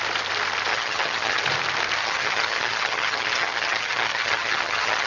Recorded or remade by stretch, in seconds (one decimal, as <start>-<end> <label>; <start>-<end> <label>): 0.0-0.7 recorded; 0.7-1.4 remade; 1.4-2.0 recorded; 2.0-5.1 remade